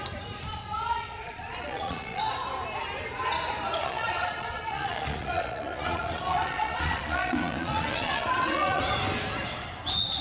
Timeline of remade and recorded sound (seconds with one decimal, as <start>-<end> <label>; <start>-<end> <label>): 0.0-0.5 recorded; 0.5-2.2 remade; 2.2-3.8 recorded; 3.8-8.8 remade; 8.8-10.2 recorded